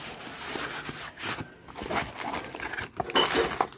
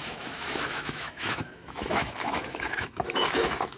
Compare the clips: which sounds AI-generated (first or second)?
second